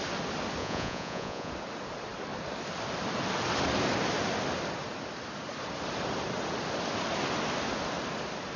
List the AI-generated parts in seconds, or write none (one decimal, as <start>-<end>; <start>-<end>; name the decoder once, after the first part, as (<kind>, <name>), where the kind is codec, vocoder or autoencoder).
0.6-1.5 (vocoder, Vocos)